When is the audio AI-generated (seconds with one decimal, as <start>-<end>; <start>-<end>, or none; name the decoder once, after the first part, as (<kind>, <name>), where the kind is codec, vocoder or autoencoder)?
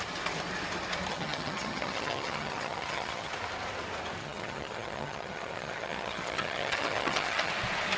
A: 1.1-3.3 (vocoder, HiFi-GAN); 4.2-7.5